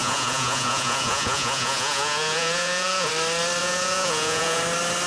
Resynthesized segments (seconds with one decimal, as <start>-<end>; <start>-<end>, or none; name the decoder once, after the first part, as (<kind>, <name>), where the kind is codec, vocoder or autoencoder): 0.0-3.1 (vocoder, Vocos); 3.6-4.6